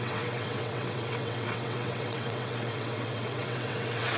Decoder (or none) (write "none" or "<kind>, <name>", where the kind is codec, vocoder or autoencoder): vocoder, WaveNeXt